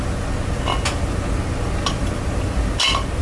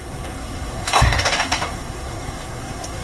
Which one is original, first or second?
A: first